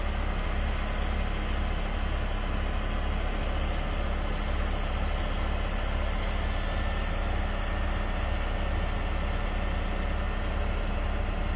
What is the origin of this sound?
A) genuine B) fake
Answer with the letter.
A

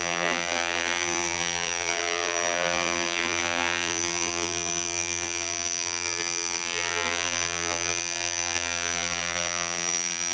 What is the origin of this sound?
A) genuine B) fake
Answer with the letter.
B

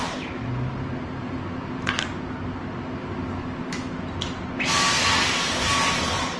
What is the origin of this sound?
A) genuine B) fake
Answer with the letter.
A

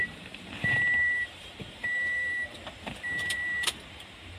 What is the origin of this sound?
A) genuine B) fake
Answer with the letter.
B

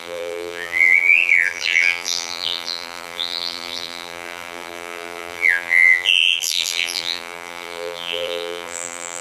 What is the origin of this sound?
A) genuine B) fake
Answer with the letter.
B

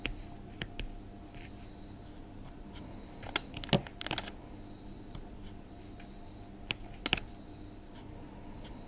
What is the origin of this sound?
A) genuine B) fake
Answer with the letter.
A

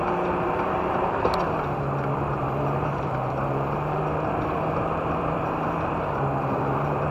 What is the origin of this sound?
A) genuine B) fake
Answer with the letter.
B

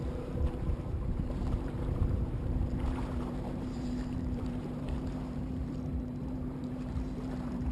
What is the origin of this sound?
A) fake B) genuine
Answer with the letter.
A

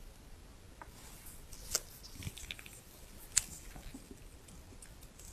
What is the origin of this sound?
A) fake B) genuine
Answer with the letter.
B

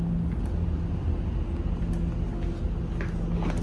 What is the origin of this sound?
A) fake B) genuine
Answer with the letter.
B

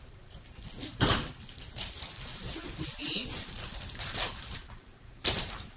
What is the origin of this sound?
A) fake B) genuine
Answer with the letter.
A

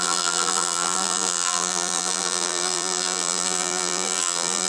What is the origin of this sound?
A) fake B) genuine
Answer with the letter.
A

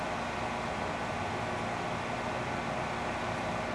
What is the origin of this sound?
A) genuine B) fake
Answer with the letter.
A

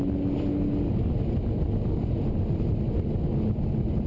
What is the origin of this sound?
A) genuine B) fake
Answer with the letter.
A